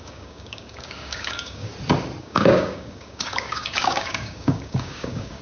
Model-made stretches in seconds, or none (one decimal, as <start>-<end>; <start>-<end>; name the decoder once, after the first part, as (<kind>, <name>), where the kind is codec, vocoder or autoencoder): 0.0-1.7 (codec, DAC); 2.2-5.4

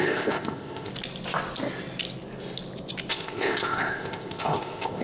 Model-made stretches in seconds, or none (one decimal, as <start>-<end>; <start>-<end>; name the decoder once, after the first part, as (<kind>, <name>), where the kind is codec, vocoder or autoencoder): 0.0-0.9 (codec, ZipCodec); 3.1-5.0

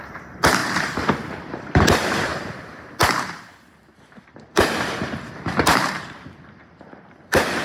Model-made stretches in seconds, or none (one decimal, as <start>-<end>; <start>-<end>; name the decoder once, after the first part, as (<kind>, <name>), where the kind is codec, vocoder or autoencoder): 0.0-7.6 (vocoder, BigVGAN v2)

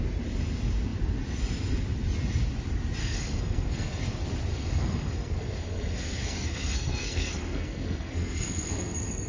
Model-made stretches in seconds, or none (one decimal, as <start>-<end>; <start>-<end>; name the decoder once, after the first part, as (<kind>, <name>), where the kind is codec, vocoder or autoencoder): 3.0-4.0 (codec, SNAC); 4.5-9.3

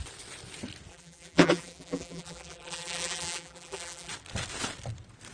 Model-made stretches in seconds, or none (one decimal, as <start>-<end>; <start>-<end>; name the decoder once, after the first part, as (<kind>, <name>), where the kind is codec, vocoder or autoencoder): 0.9-4.1 (vocoder, BigVGAN v2)

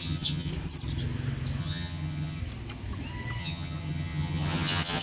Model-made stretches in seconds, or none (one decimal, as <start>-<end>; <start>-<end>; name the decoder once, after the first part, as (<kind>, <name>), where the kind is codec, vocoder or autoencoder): 0.0-0.5 (vocoder, HiFi-GAN); 1.6-2.4; 3.4-5.0

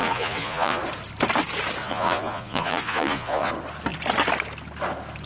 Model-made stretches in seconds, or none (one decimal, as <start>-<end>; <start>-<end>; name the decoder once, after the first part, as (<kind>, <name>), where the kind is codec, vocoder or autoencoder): 0.0-0.8 (vocoder, Vocos); 1.8-3.5

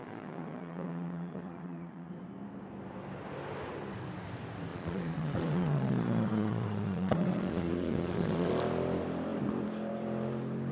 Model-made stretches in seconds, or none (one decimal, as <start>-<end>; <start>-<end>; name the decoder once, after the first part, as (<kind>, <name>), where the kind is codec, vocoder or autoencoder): 0.0-2.1 (vocoder, Vocos); 4.7-8.5